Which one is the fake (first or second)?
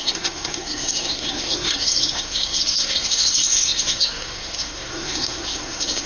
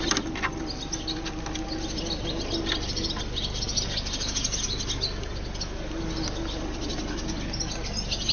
first